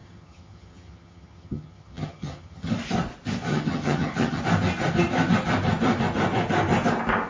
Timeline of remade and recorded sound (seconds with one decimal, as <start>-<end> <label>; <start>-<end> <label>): 0.0-2.7 remade; 2.7-3.5 recorded; 3.5-4.4 remade; 4.4-7.3 recorded